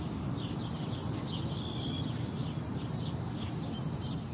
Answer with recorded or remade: recorded